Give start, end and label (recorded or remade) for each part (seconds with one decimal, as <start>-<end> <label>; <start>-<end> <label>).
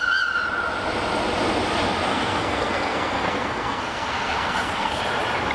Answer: 0.0-2.1 recorded; 2.1-5.0 remade; 5.0-5.5 recorded